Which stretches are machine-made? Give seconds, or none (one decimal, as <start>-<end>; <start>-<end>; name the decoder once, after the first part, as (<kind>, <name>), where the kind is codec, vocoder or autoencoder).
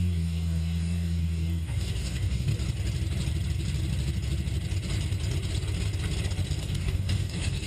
0.0-2.5 (codec, DAC); 6.6-7.7